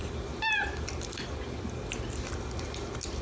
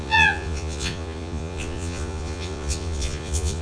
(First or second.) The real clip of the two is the first